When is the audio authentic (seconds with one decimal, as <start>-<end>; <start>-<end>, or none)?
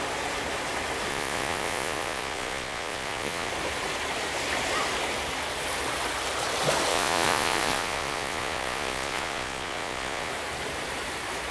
0.0-1.1; 3.5-6.9; 10.3-11.5